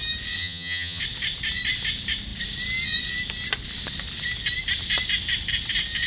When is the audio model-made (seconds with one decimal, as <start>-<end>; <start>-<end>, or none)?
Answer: 0.4-1.0